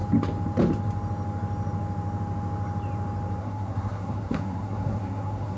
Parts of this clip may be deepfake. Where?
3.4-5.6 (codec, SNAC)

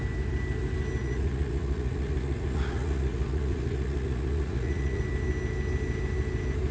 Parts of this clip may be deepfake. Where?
1.0-5.0 (vocoder, Vocos)